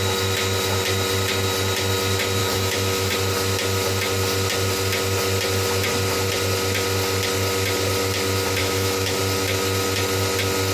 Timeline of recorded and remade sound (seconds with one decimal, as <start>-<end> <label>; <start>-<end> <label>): 0.0-2.4 recorded; 2.4-3.1 remade; 3.1-8.6 recorded; 8.6-9.2 remade; 9.2-10.7 recorded